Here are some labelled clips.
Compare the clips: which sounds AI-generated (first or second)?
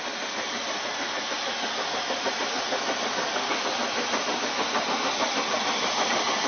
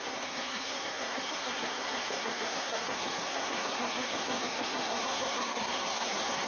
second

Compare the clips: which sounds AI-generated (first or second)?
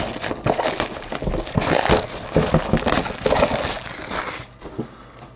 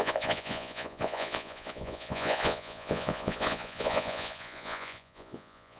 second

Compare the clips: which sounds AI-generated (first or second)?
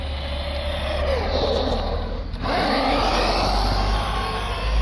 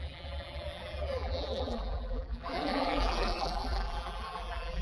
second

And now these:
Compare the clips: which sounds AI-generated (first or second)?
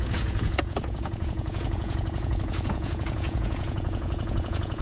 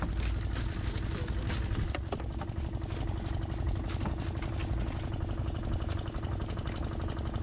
first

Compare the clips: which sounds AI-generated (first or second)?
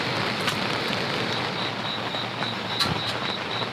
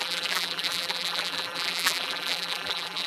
second